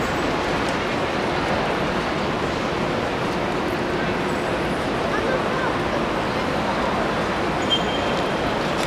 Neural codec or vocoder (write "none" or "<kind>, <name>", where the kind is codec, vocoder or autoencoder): none